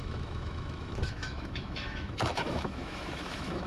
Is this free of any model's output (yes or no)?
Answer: no